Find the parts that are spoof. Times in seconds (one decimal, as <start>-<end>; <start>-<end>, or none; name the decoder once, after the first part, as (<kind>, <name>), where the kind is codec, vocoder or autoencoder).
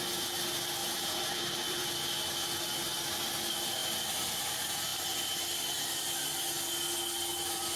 0.8-1.9 (vocoder, BigVGAN v2)